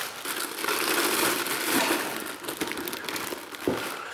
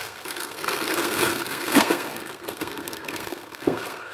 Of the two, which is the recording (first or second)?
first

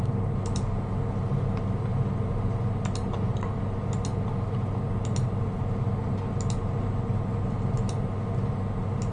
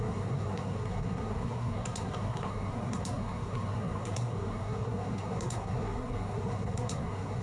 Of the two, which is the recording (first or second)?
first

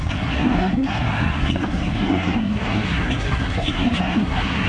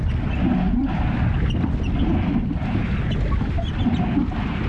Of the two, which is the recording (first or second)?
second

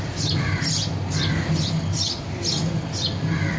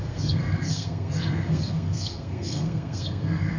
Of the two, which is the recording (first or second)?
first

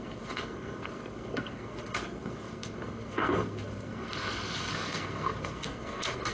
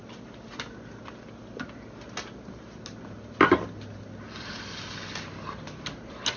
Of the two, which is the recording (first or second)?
second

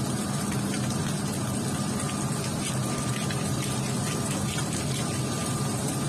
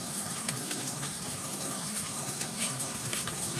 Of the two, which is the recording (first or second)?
first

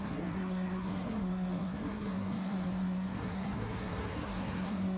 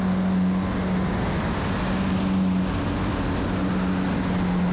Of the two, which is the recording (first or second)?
second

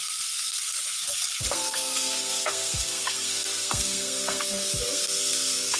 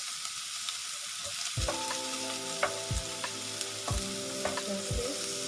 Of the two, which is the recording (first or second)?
second